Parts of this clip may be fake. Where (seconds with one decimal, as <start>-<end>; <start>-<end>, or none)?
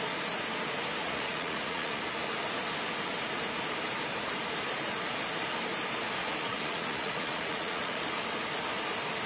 1.0-2.0; 6.2-8.0